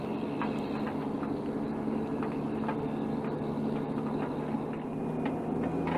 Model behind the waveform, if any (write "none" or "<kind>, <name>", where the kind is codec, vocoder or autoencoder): none